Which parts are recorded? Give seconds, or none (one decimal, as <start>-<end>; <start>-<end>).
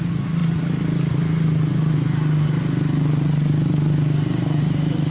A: 0.0-5.1